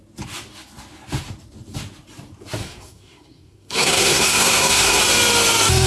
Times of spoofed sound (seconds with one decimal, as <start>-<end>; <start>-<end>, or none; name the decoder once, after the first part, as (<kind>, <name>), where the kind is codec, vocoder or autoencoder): 2.6-5.0 (codec, SNAC)